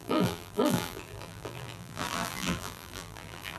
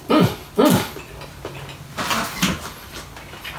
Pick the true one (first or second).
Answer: second